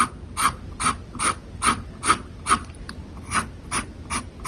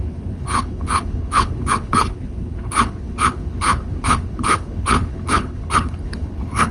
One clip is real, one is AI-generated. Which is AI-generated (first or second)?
second